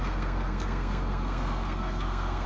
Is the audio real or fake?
fake